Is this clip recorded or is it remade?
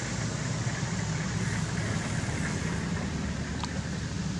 recorded